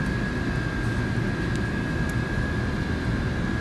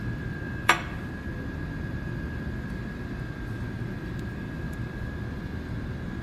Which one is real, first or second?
first